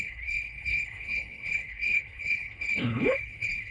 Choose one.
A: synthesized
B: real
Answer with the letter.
A